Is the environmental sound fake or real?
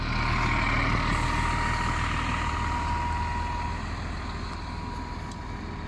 real